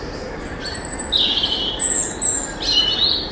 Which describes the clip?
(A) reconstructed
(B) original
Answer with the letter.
B